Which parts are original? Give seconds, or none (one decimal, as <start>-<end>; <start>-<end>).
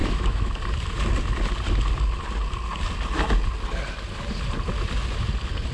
0.5-5.7